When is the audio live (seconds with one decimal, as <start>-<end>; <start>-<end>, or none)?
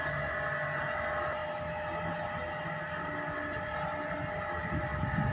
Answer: 0.0-5.3